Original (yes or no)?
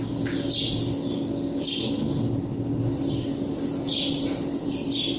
yes